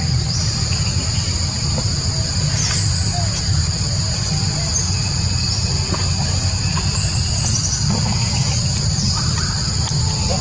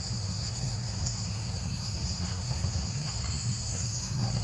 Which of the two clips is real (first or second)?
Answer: first